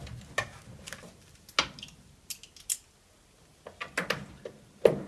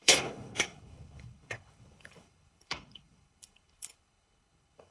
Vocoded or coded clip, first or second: second